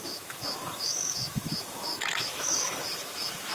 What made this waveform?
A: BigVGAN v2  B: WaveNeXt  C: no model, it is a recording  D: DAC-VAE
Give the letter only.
D